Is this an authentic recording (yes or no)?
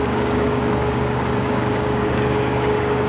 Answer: no